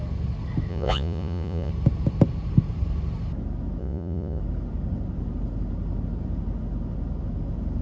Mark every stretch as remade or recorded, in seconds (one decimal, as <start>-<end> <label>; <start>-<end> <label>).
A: 0.0-0.7 recorded; 0.7-1.7 remade; 1.7-3.8 recorded; 3.8-4.4 remade; 4.4-7.8 recorded